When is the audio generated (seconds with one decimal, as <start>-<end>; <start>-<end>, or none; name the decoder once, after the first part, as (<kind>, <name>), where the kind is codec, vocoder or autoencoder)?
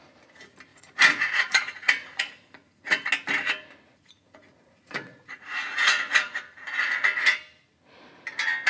0.7-3.1 (vocoder, Vocos); 3.9-7.0